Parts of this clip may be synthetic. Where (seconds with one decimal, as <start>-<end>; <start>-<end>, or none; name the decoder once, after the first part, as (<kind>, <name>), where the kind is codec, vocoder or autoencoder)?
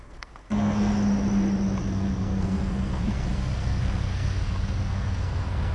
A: 0.0-0.9 (codec, SNAC); 1.8-5.7